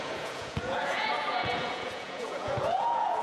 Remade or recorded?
remade